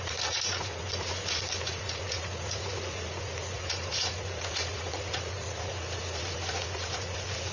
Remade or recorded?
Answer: remade